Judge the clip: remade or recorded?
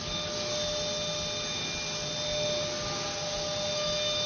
recorded